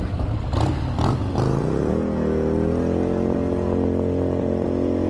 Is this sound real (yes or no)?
yes